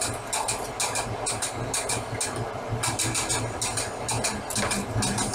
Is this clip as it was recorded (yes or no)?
yes